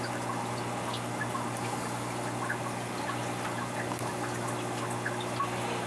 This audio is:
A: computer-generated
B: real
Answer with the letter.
B